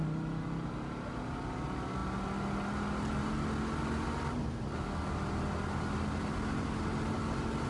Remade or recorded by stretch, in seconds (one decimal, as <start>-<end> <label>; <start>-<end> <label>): 0.0-7.7 recorded